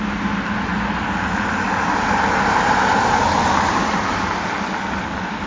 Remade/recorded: recorded